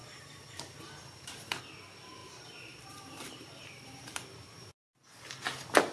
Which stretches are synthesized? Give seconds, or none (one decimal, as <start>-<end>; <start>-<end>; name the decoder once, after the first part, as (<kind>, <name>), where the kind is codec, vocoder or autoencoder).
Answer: 0.0-1.6 (vocoder, BigVGAN v2); 2.2-4.7